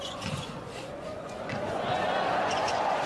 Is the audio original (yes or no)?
no